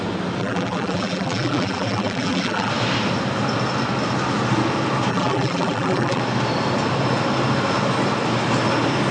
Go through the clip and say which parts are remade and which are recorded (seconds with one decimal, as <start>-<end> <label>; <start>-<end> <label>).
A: 0.0-0.4 recorded; 0.4-2.7 remade; 2.7-5.1 recorded; 5.1-6.2 remade; 6.2-9.1 recorded